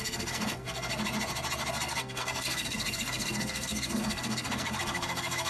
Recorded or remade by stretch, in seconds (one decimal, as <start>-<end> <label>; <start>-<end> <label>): 0.0-0.9 remade; 0.9-1.7 recorded; 1.7-5.5 remade